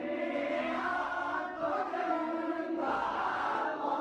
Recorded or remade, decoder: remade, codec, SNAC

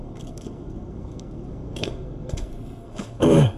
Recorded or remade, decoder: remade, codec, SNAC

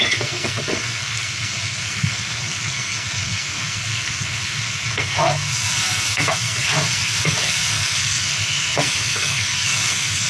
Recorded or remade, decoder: remade, codec, SNAC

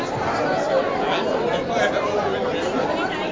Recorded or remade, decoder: recorded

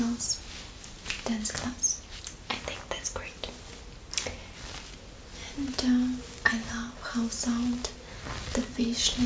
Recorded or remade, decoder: recorded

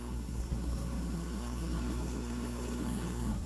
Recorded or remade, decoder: remade, codec, SNAC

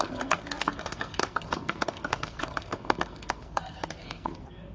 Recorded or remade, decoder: remade, codec, SNAC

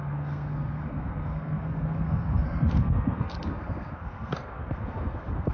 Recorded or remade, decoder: remade, codec, SNAC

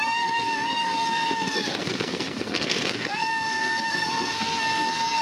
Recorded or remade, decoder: remade, codec, SNAC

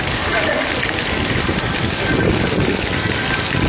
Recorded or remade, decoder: recorded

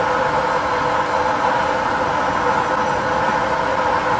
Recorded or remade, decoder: recorded